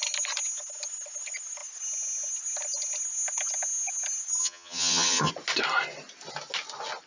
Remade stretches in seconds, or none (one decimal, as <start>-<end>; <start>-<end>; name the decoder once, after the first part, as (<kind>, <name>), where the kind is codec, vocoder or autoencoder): 4.4-5.3 (vocoder, HiFi-GAN)